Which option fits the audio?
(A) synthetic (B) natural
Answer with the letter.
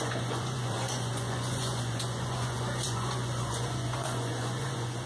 A